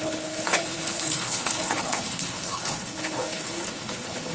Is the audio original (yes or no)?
no